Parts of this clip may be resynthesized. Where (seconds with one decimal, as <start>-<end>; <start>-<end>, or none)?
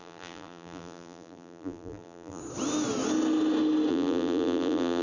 0.0-2.4; 3.9-5.0